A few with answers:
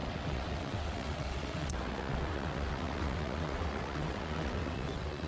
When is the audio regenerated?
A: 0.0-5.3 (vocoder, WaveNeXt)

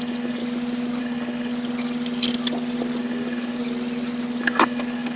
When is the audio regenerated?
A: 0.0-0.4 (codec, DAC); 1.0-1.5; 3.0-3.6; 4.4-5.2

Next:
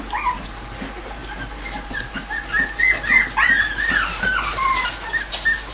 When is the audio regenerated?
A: none

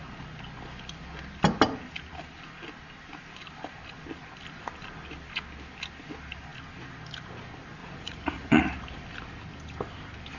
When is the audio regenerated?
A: 7.8-8.6 (vocoder, Vocos)